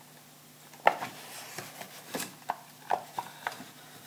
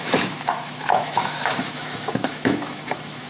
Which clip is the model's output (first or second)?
second